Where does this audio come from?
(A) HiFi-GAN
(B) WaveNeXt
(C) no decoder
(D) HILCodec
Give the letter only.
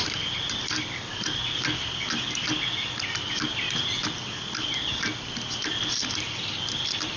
C